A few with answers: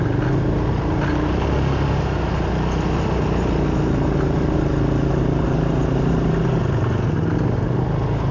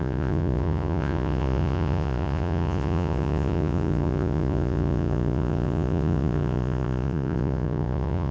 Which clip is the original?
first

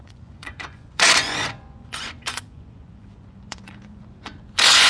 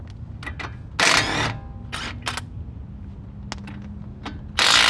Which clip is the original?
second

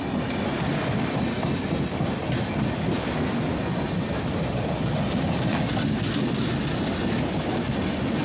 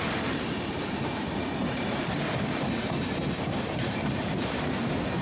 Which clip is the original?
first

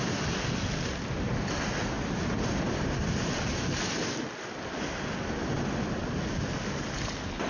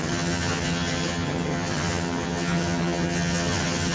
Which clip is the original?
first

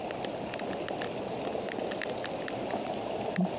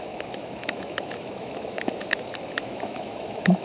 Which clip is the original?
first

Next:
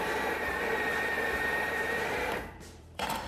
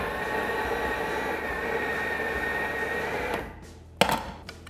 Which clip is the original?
second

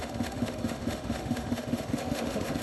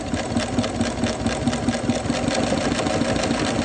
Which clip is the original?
second